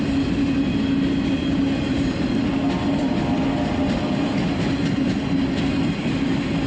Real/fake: real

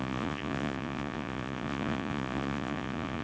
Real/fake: fake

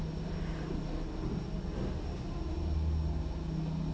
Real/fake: real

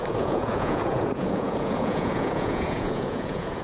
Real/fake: fake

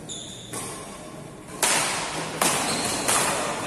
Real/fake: real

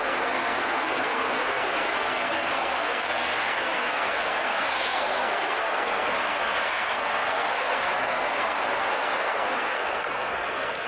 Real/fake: fake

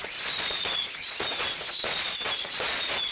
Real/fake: fake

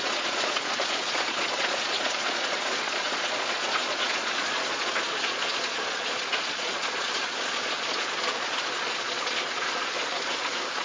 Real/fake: fake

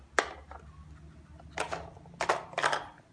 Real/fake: real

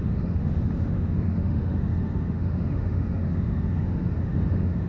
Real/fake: fake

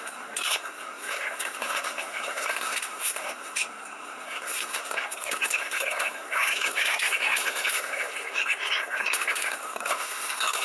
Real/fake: fake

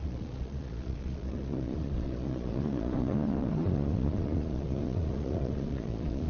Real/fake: fake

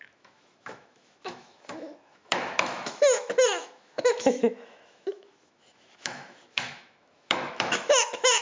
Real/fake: fake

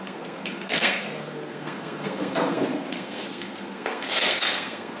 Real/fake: fake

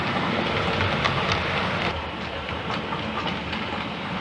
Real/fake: real